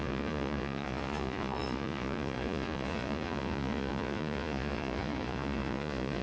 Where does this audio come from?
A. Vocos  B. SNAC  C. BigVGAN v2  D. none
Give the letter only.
A